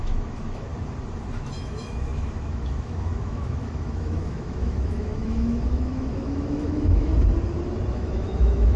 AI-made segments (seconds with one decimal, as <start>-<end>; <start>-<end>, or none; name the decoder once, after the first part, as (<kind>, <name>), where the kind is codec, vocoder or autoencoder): 0.0-0.7 (autoencoder, DAC-VAE); 1.3-7.1; 7.9-8.8